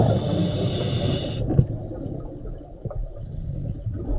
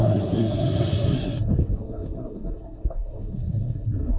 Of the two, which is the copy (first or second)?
second